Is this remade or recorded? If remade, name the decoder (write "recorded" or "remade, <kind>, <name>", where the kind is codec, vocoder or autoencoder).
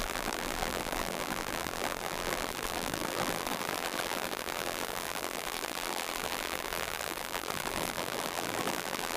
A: remade, vocoder, BigVGAN v2